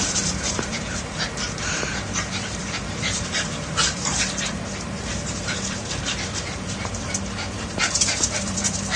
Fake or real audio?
fake